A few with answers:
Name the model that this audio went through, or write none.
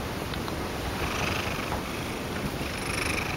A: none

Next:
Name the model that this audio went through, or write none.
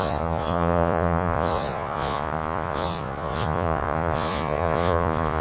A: vocoder, Vocos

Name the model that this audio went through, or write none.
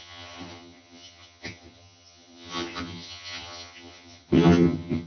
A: vocoder, HiFi-GAN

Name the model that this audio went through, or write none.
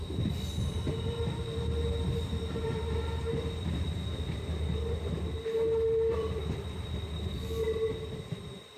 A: none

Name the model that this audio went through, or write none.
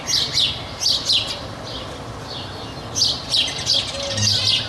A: none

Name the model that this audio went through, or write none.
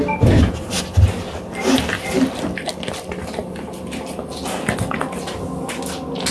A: none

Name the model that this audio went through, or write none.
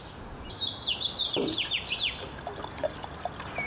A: none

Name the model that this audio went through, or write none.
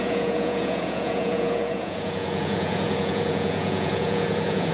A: vocoder, Vocos